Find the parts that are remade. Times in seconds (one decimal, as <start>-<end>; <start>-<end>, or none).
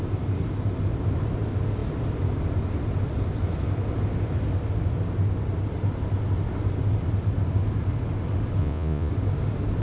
8.6-9.1